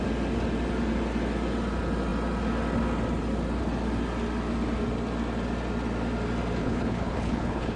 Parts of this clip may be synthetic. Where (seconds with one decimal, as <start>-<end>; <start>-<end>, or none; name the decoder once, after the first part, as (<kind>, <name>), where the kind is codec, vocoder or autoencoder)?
6.6-7.8 (codec, HILCodec)